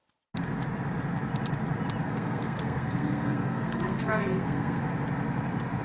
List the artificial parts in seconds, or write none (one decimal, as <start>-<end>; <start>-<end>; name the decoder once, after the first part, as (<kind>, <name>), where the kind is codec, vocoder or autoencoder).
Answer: 2.0-4.8 (codec, SNAC)